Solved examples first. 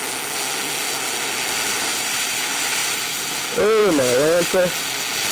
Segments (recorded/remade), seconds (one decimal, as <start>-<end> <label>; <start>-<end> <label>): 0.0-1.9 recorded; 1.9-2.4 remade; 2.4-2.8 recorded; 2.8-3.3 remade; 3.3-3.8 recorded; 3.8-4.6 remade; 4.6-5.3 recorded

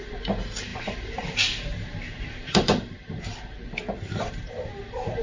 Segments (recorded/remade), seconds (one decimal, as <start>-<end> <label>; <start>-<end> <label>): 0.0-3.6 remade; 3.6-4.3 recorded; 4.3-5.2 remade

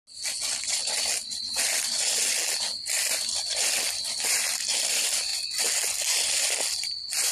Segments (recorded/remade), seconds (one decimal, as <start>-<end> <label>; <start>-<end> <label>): 0.0-7.3 recorded

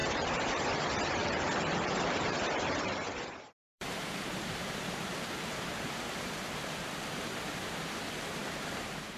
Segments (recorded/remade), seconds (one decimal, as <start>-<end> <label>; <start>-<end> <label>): 0.0-0.7 remade; 0.7-1.2 recorded; 1.2-6.3 remade; 6.3-8.4 recorded; 8.4-9.2 remade

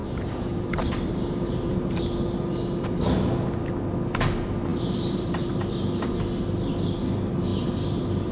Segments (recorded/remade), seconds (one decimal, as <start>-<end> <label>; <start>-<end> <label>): 0.0-2.0 remade; 2.0-4.7 recorded; 4.7-5.6 remade; 5.6-7.5 recorded; 7.5-8.3 remade

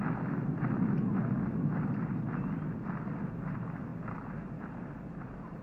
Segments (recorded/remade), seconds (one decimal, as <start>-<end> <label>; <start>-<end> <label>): 0.0-5.6 recorded

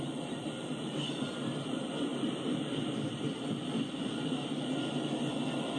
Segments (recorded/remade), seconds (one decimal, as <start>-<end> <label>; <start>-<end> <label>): 0.0-5.8 recorded